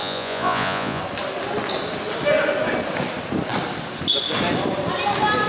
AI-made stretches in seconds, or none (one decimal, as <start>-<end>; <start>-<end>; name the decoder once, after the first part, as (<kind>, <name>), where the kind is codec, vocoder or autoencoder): 0.0-1.0 (vocoder, Vocos)